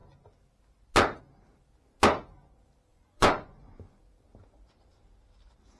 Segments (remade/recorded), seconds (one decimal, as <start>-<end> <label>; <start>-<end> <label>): 0.0-2.9 recorded; 2.9-4.0 remade; 4.0-5.8 recorded